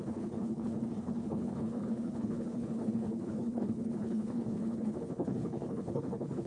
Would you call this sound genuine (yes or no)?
no